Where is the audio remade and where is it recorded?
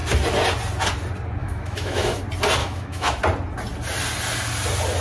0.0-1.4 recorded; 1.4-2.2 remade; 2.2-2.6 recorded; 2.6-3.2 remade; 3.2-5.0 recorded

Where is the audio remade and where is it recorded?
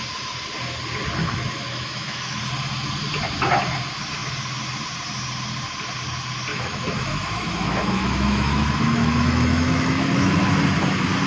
0.0-1.2 recorded; 1.2-2.4 remade; 2.4-6.5 recorded; 6.5-10.5 remade; 10.5-11.3 recorded